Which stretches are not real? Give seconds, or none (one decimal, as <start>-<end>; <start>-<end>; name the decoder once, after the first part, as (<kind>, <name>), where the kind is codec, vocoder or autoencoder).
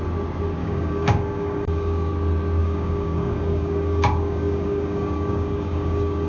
0.6-2.1 (codec, DAC); 2.6-6.3